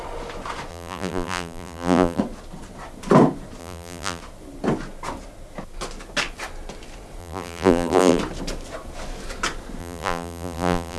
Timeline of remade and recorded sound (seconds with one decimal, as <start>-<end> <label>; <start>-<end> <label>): 0.0-0.7 recorded; 0.7-2.2 remade; 2.2-3.6 recorded; 3.6-4.2 remade; 4.2-7.2 recorded; 7.2-8.2 remade; 8.2-9.8 recorded; 9.8-11.0 remade

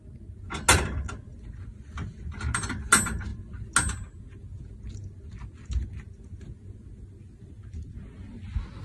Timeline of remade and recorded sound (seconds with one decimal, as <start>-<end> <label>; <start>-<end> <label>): 0.0-8.8 recorded

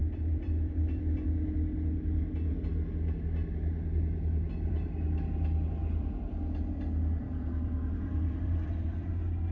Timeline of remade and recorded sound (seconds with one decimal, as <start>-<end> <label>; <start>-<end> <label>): 0.0-5.8 recorded; 5.8-9.1 remade; 9.1-9.5 recorded

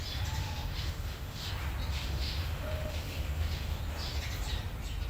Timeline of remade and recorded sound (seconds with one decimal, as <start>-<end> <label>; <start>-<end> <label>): 0.0-0.4 recorded; 0.4-1.5 remade; 1.5-1.9 recorded; 1.9-3.8 remade; 3.8-5.1 recorded

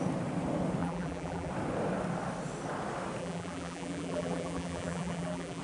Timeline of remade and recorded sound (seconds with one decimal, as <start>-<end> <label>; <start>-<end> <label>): 0.0-0.8 recorded; 0.8-1.5 remade; 1.5-3.2 recorded; 3.2-5.6 remade

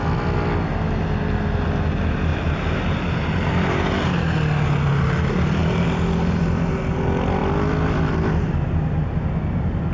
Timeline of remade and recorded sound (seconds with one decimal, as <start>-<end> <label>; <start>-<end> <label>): 0.0-2.3 recorded; 2.3-3.9 remade; 3.9-5.6 recorded; 5.6-6.7 remade; 6.7-7.4 recorded; 7.4-8.1 remade; 8.1-9.9 recorded

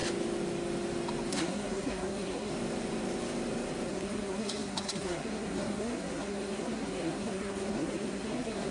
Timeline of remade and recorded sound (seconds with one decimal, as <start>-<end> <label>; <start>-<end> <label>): 0.0-1.3 recorded; 1.3-2.5 remade; 2.5-3.9 recorded; 3.9-8.7 remade

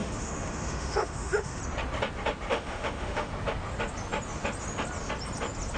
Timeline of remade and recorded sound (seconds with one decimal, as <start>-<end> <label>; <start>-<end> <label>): 0.0-1.6 remade; 1.6-2.5 recorded; 2.5-3.3 remade; 3.3-5.8 recorded